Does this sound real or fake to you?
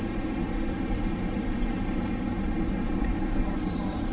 fake